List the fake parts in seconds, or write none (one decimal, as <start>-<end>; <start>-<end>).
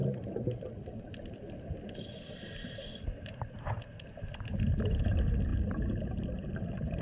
4.2-5.5; 6.5-7.0